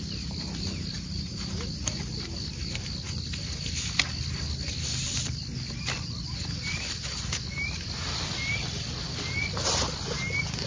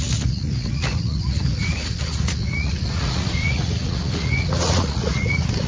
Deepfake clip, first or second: second